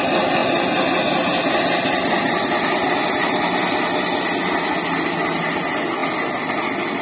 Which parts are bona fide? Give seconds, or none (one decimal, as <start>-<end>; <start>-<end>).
0.0-7.0